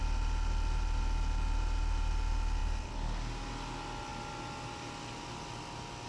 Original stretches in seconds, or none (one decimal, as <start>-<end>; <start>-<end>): 0.0-6.1